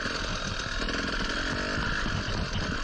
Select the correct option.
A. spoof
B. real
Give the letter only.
B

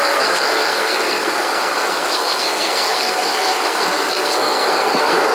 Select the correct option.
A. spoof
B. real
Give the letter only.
A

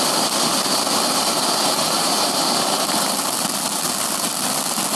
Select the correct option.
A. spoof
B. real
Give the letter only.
B